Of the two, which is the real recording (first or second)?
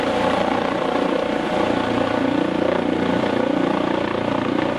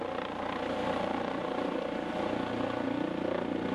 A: second